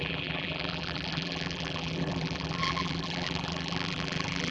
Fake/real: fake